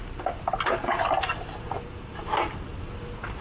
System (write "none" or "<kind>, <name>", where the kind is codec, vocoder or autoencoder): vocoder, BigVGAN v2